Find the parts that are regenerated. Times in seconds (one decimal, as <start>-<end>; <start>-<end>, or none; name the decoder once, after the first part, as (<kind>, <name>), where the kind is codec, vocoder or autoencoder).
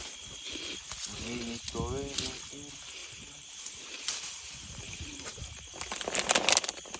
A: 3.0-5.3 (vocoder, BigVGAN v2)